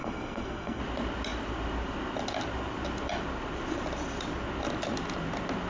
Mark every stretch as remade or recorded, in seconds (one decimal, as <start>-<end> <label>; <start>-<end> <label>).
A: 0.0-0.8 remade; 0.8-5.7 recorded